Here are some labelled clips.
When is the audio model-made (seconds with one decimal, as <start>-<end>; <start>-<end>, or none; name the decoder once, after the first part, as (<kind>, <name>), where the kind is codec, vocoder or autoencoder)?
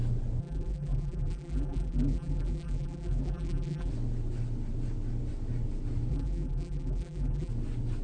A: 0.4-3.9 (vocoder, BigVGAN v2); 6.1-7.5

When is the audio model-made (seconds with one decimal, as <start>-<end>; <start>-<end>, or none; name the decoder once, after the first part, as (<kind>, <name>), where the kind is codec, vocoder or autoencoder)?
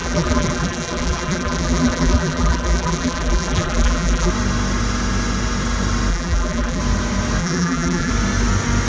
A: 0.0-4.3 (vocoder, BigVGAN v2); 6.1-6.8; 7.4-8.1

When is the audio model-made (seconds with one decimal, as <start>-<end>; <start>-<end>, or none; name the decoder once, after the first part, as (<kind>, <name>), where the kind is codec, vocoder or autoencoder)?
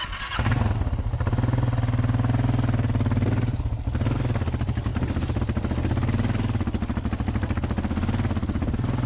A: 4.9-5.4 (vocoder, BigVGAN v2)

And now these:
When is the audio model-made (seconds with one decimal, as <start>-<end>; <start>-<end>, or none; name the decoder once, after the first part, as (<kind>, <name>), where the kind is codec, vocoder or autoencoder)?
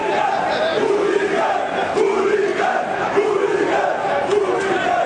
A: 0.0-1.0 (vocoder, BigVGAN v2); 2.5-3.3; 4.3-5.1